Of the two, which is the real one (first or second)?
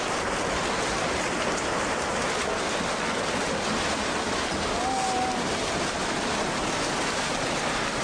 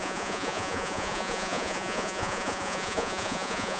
first